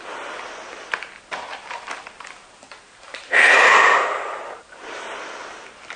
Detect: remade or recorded recorded